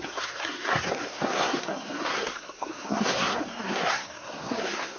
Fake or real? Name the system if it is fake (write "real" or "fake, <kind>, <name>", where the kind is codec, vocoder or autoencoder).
fake, codec, SNAC